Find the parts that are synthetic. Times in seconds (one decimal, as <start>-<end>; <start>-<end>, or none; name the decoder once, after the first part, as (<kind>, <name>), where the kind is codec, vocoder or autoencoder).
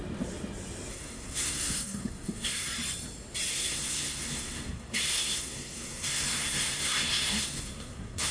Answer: 0.9-2.7 (codec, SNAC); 3.5-8.3